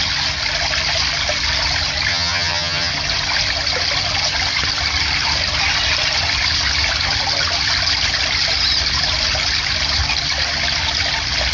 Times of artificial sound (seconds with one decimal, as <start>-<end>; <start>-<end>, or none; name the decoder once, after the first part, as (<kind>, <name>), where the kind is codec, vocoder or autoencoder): 2.1-2.9 (vocoder, HiFi-GAN)